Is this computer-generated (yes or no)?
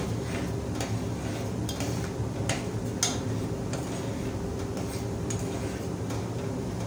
no